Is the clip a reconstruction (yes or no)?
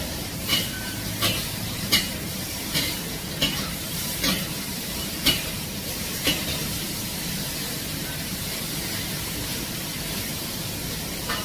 yes